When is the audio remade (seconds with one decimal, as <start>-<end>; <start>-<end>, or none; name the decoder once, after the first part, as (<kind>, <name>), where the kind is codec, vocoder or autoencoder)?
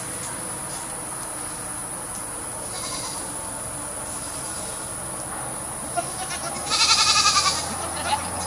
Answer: none